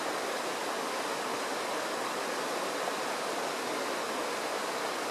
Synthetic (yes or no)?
no